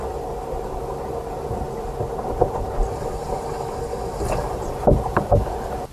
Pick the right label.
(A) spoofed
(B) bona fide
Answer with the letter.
B